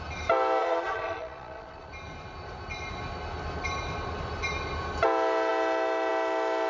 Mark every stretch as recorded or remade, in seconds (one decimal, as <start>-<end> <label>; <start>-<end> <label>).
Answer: 0.0-0.6 recorded; 0.6-1.9 remade; 1.9-6.7 recorded